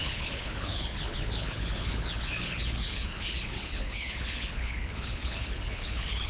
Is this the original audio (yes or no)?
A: no